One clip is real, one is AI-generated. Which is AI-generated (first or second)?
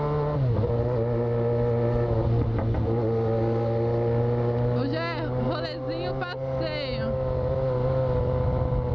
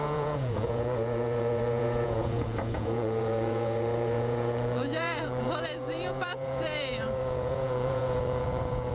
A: second